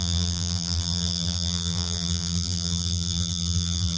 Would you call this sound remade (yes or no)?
yes